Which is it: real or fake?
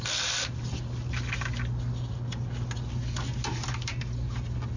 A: real